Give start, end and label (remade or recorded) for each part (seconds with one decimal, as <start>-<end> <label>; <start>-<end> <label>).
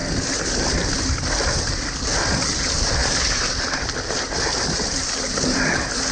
0.0-6.1 recorded